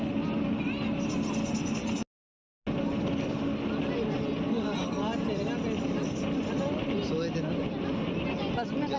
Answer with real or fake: real